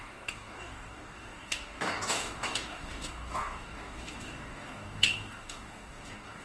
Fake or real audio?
fake